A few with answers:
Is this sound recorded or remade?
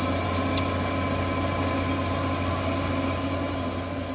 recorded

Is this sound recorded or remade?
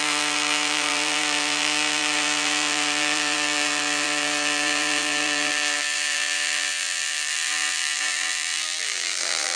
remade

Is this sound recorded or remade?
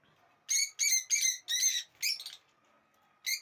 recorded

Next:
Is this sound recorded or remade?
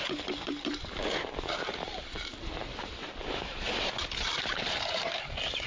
remade